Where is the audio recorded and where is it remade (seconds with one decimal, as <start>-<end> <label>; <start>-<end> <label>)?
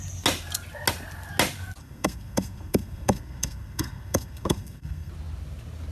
0.0-1.8 recorded; 1.8-5.1 remade; 5.1-5.9 recorded